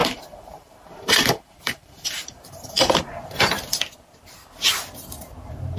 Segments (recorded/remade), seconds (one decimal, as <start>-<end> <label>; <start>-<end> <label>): 0.0-3.5 remade; 3.5-5.8 recorded